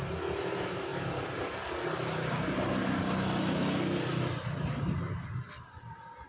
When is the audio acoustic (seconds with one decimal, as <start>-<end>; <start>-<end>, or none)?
0.0-6.3